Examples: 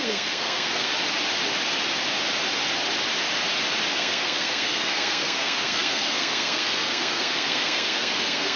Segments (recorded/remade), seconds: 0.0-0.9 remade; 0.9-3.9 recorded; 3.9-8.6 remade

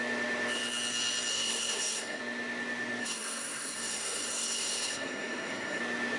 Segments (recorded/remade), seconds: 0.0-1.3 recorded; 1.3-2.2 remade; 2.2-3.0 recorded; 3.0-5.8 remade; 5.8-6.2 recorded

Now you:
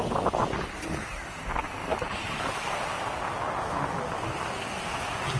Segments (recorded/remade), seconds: 0.0-5.4 recorded

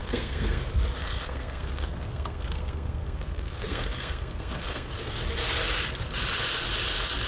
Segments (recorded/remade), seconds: 0.0-0.6 remade; 0.6-1.0 recorded; 1.0-5.2 remade; 5.2-7.3 recorded

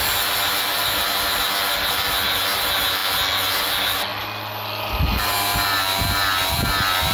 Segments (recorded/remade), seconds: 0.0-7.1 recorded

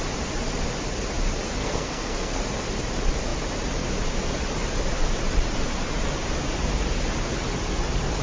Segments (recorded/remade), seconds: 0.0-1.6 recorded; 1.6-2.4 remade; 2.4-8.2 recorded

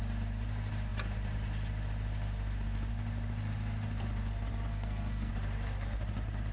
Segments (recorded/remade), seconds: 0.0-4.7 recorded; 4.7-5.3 remade; 5.3-6.5 recorded